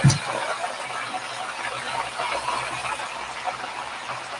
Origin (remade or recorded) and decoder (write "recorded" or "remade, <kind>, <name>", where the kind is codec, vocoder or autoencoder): recorded